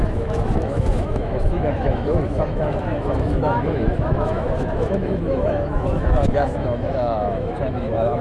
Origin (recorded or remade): remade